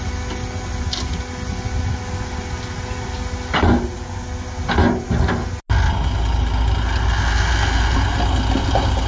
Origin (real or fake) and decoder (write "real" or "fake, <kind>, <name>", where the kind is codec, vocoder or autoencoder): real